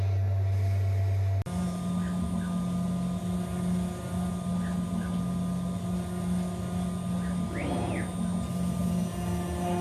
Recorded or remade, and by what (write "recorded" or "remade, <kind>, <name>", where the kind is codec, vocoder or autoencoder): recorded